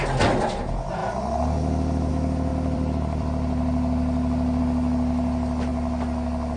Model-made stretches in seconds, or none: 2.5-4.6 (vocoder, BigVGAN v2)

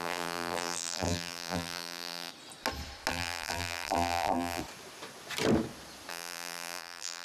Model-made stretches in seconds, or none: 0.0-2.3 (vocoder, BigVGAN v2); 3.1-4.6; 6.1-7.2

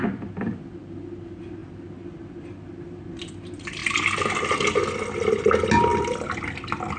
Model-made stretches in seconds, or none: 1.6-3.0 (vocoder, BigVGAN v2)

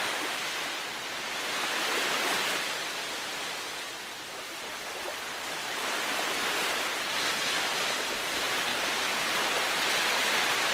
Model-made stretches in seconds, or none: 8.7-10.0 (vocoder, BigVGAN v2)

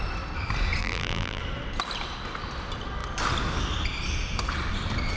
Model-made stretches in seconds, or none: 0.8-1.4 (vocoder, BigVGAN v2)

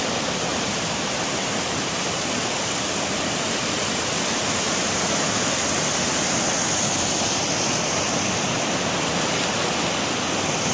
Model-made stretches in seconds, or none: 0.5-2.5 (vocoder, BigVGAN v2)

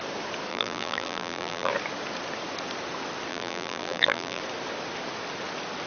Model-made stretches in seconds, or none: 0.5-1.7 (vocoder, BigVGAN v2); 3.3-4.4